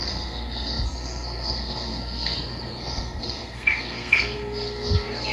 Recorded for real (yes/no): no